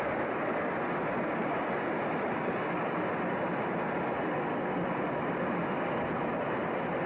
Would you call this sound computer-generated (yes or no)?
no